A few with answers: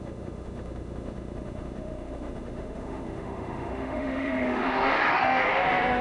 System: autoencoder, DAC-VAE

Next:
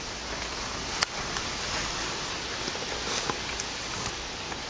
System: none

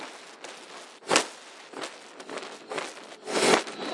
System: none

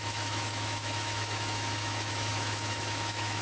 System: autoencoder, DAC-VAE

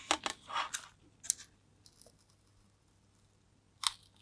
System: none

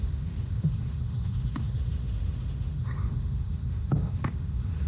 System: autoencoder, DAC-VAE